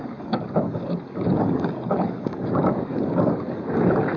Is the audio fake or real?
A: fake